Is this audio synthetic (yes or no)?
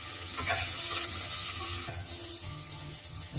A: yes